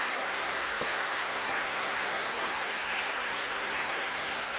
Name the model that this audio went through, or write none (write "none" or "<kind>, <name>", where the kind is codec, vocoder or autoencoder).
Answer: codec, SNAC